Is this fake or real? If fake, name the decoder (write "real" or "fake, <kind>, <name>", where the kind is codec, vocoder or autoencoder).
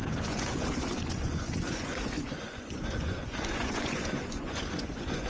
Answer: fake, vocoder, Vocos